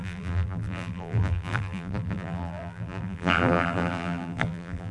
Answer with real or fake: fake